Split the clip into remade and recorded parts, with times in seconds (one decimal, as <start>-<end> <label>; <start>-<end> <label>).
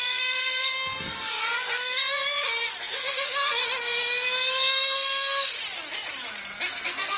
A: 0.0-2.0 remade; 2.0-2.8 recorded; 2.8-3.6 remade; 3.6-4.7 recorded; 4.7-5.6 remade; 5.6-6.7 recorded; 6.7-7.2 remade